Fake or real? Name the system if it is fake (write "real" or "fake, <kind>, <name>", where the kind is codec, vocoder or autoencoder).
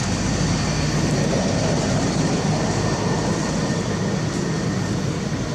real